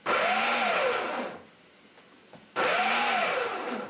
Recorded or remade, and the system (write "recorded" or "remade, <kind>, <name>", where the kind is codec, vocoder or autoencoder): recorded